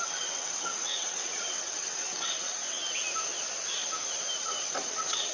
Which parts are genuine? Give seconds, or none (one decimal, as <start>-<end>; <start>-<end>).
2.6-4.4